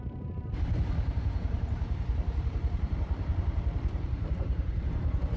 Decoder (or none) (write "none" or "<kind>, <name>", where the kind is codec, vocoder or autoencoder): vocoder, BigVGAN v2